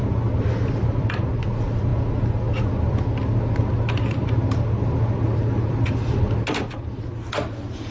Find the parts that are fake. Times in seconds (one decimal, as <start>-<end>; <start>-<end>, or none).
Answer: none